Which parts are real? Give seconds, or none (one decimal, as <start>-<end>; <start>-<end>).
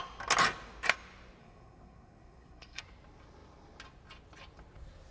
0.0-1.4; 2.8-5.1